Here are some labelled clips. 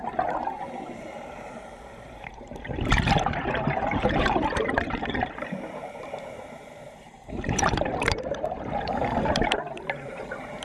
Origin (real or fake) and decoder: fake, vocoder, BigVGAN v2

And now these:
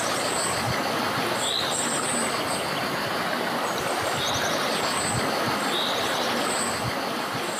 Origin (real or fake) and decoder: real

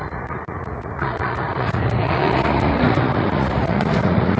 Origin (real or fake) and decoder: fake, vocoder, Vocos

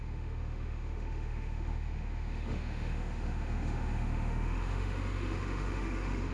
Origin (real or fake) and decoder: fake, autoencoder, DAC-VAE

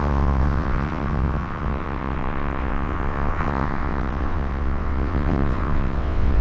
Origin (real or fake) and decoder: fake, vocoder, WaveNeXt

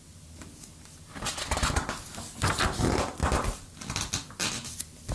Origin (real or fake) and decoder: real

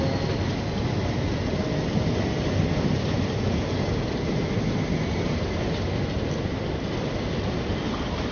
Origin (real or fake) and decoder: real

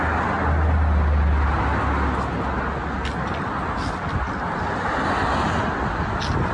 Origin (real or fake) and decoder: real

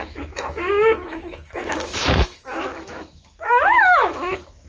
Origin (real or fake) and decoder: fake, autoencoder, DAC-VAE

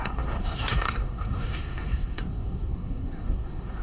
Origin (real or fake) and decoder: fake, codec, SNAC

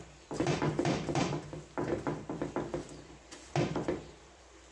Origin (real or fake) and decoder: fake, vocoder, BigVGAN v2